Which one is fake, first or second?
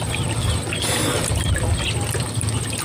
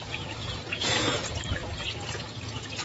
second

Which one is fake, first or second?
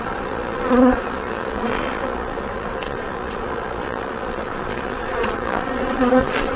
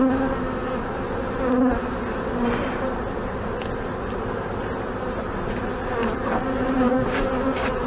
first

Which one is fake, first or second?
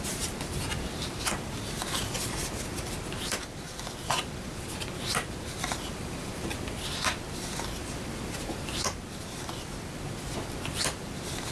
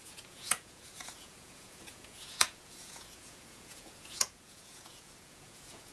second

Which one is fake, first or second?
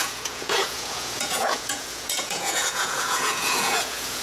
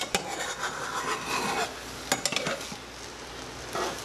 first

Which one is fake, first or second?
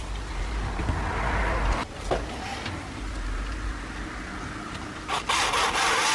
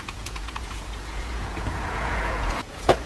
second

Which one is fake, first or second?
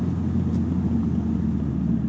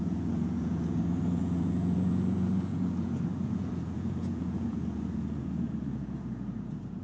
second